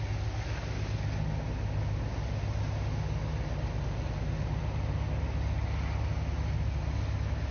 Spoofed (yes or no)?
no